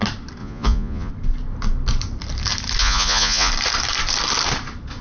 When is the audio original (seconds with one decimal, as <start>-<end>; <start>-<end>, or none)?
0.0-0.4; 1.1-2.8; 3.5-5.0